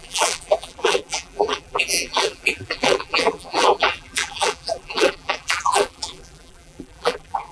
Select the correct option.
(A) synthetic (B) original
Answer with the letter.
A